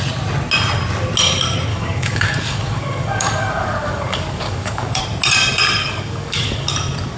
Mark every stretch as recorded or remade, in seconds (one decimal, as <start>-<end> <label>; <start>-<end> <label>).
0.0-1.7 recorded; 1.7-5.0 remade; 5.0-5.8 recorded; 5.8-6.7 remade; 6.7-7.2 recorded